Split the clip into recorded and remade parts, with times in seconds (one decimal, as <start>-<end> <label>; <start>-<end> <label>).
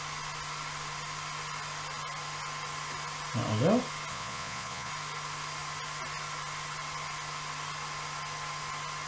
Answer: 0.0-4.1 recorded; 4.1-4.9 remade; 4.9-9.1 recorded